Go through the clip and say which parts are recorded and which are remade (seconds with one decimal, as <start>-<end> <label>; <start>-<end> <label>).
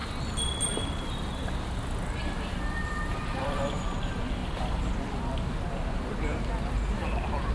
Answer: 0.0-3.1 recorded; 3.1-4.0 remade; 4.0-4.4 recorded; 4.4-6.2 remade; 6.2-7.5 recorded